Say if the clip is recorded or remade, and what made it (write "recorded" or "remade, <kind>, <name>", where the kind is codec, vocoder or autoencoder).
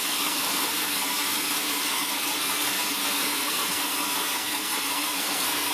remade, codec, SNAC